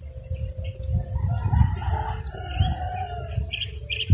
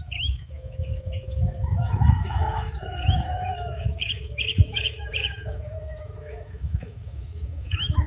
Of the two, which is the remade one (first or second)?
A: second